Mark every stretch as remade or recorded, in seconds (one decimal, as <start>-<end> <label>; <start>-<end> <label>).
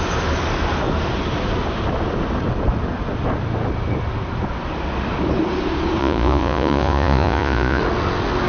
0.0-6.0 recorded; 6.0-7.8 remade; 7.8-8.5 recorded